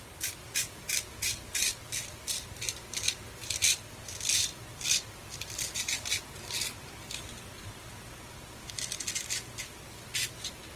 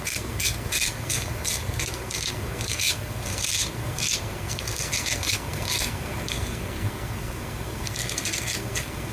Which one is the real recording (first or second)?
first